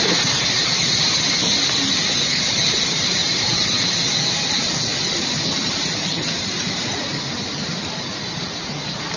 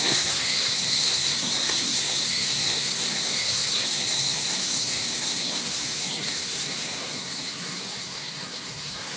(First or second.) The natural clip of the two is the first